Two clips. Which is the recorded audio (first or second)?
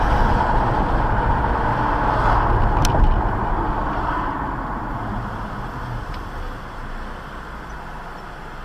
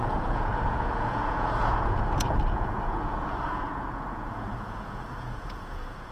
first